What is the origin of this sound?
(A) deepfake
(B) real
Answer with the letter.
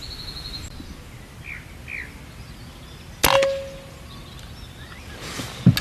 B